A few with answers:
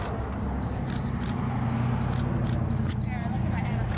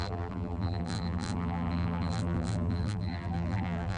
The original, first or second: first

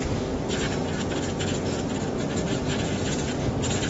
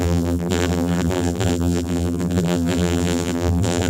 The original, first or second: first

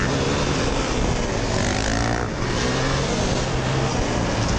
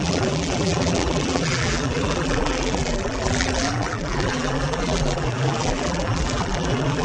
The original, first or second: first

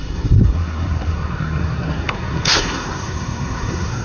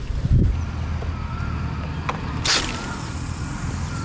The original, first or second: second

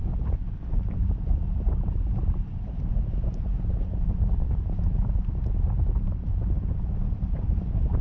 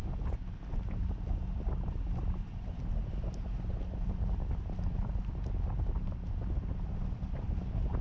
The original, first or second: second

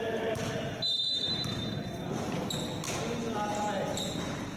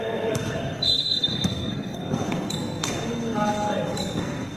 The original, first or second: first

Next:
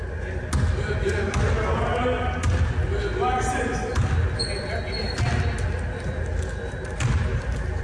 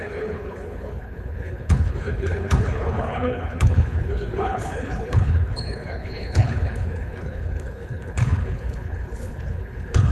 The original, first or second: first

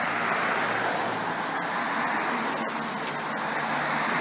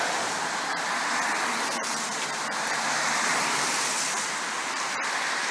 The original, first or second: first